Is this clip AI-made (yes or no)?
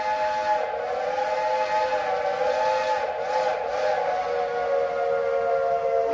no